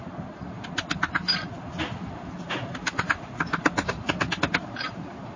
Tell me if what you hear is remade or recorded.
recorded